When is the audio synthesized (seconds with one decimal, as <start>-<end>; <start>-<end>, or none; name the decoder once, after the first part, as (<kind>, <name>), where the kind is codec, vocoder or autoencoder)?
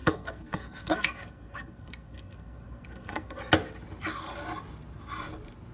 0.0-3.4 (codec, SNAC)